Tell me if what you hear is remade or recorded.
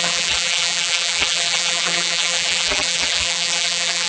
remade